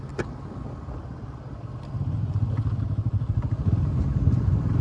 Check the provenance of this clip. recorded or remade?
recorded